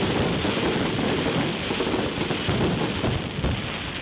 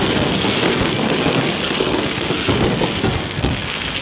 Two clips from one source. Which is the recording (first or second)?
first